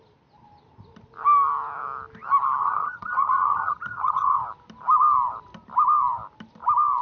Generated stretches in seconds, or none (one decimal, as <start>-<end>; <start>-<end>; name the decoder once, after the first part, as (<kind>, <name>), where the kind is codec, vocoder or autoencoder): 2.6-4.4 (vocoder, HiFi-GAN)